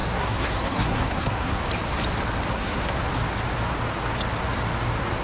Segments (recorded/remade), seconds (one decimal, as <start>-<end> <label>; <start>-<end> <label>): 0.0-1.6 remade; 1.6-2.5 recorded; 2.5-3.0 remade; 3.0-5.2 recorded

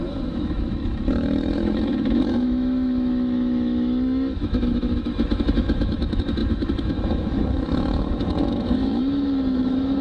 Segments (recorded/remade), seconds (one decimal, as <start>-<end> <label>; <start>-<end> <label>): 0.0-10.0 remade